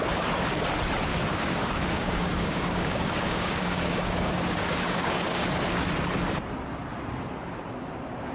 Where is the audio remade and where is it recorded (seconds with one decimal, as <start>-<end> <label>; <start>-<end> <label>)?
0.0-1.1 recorded; 1.1-5.5 remade; 5.5-8.3 recorded